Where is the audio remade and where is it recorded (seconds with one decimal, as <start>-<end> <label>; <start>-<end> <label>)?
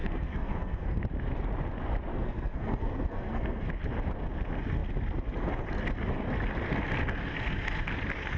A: 0.0-1.0 remade; 1.0-2.1 recorded; 2.1-3.7 remade; 3.7-8.4 recorded